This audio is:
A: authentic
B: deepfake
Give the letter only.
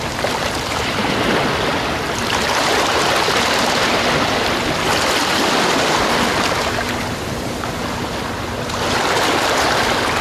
A